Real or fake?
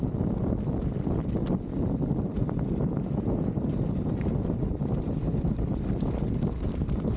fake